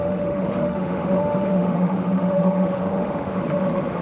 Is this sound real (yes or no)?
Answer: no